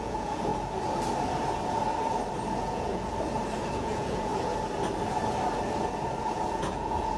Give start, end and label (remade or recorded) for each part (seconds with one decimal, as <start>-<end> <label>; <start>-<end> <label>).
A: 0.0-0.5 remade; 0.5-2.6 recorded; 2.6-3.1 remade; 3.1-3.7 recorded; 3.7-4.3 remade; 4.3-6.3 recorded; 6.3-7.2 remade